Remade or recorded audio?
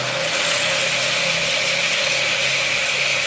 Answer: recorded